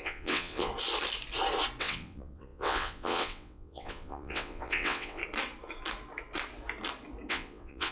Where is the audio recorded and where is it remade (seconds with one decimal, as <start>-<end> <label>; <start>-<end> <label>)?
0.0-0.7 remade; 0.7-1.8 recorded; 1.8-5.2 remade; 5.2-7.3 recorded; 7.3-7.9 remade